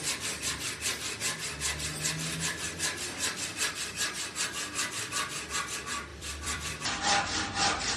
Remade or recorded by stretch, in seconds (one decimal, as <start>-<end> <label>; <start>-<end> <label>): 0.0-6.1 recorded; 6.1-7.0 remade; 7.0-8.0 recorded